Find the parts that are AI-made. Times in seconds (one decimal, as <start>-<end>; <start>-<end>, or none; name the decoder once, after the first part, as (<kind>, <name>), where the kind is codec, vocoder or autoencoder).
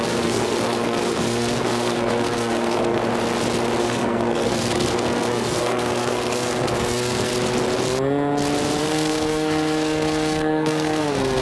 0.0-3.0 (codec, SNAC); 3.8-7.3; 8.8-11.4